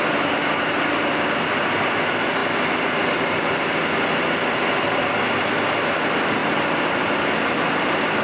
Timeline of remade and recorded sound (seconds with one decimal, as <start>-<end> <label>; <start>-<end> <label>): 0.0-6.4 recorded; 6.4-8.2 remade

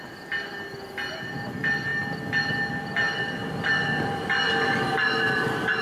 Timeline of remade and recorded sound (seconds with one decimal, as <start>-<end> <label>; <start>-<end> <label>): 0.0-1.9 recorded; 1.9-2.5 remade; 2.5-3.0 recorded; 3.0-4.0 remade; 4.0-5.8 recorded

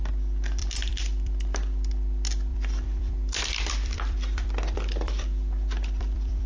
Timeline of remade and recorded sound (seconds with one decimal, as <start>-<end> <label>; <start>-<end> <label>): 0.0-0.6 recorded; 0.6-1.9 remade; 1.9-2.5 recorded; 2.5-6.5 remade

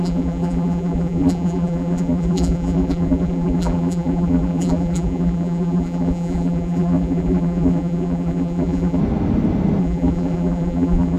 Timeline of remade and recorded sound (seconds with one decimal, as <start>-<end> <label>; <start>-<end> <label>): 0.0-9.0 remade; 9.0-9.8 recorded; 9.8-11.2 remade

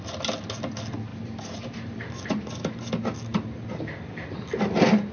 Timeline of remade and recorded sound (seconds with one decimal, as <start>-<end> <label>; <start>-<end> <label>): 0.0-1.1 recorded; 1.1-2.9 remade; 2.9-5.1 recorded

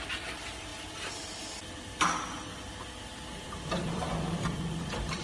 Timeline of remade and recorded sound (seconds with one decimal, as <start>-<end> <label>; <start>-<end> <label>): 0.0-0.7 remade; 0.7-1.6 recorded; 1.6-2.5 remade; 2.5-3.1 recorded; 3.1-5.2 remade

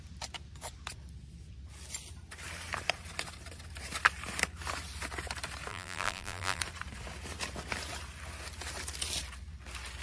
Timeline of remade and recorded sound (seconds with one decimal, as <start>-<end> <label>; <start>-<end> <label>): 0.0-5.7 recorded; 5.7-6.6 remade; 6.6-10.0 recorded

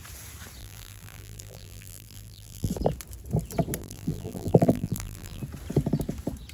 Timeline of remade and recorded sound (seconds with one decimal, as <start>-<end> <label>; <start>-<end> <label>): 0.0-0.6 recorded; 0.6-2.7 remade; 2.7-3.8 recorded; 3.8-5.4 remade; 5.4-6.5 recorded